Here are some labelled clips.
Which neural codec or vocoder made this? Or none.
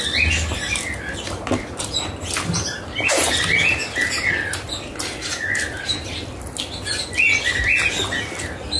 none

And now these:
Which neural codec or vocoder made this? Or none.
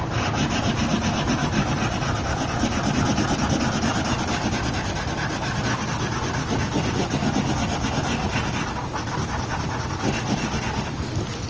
none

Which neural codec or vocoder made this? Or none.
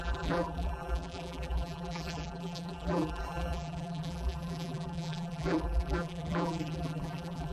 vocoder, BigVGAN v2